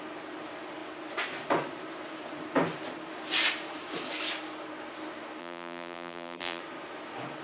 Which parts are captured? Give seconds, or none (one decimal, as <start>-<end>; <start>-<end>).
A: 0.0-5.4; 6.6-7.4